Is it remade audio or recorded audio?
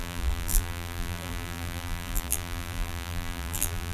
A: remade